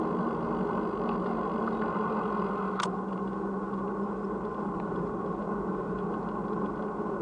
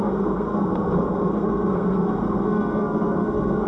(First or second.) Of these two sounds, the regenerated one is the second